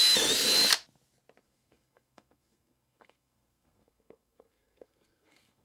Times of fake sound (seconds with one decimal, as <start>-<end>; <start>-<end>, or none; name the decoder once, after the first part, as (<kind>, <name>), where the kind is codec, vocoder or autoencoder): 1.4-5.6 (codec, SNAC)